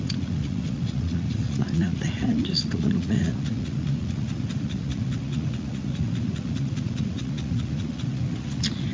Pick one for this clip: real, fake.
fake